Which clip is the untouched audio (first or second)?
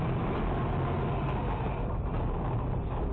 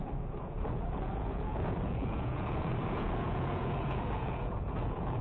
first